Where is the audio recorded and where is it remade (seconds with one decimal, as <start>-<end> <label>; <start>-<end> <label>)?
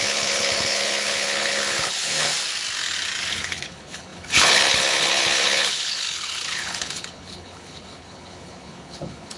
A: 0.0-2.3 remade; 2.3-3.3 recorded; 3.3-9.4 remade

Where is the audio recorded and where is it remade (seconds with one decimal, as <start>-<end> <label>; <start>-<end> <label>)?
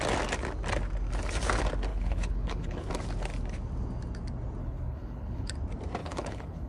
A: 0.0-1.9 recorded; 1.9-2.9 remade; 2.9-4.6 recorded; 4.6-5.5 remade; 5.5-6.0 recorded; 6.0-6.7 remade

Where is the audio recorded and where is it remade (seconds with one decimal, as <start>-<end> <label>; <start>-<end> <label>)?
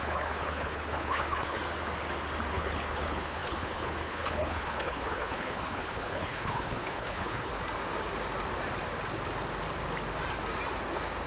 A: 0.0-1.6 remade; 1.6-2.5 recorded; 2.5-7.5 remade; 7.5-11.3 recorded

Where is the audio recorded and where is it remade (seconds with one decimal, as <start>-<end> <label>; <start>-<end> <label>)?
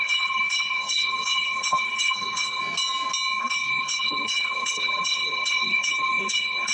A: 0.0-2.6 remade; 2.6-3.4 recorded; 3.4-6.7 remade